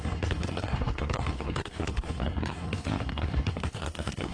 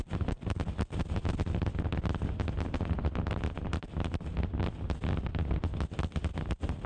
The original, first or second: second